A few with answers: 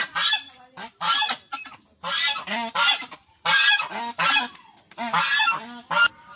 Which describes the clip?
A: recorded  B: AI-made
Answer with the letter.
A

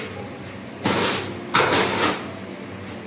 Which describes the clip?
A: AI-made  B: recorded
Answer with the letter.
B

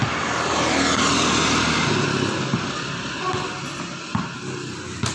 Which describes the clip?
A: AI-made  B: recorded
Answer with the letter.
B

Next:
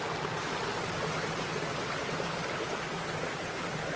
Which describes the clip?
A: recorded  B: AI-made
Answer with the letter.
A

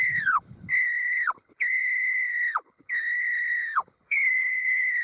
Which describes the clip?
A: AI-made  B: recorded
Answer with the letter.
A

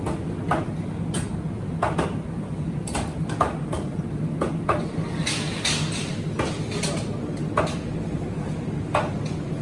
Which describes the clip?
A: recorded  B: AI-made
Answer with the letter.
A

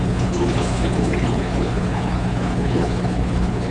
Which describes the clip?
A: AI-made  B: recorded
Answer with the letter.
A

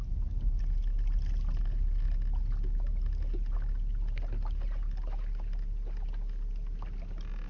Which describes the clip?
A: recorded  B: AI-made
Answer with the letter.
A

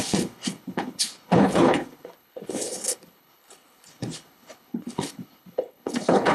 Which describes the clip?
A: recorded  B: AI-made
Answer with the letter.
B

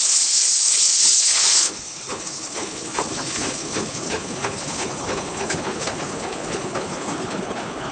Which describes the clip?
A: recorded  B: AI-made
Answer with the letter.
B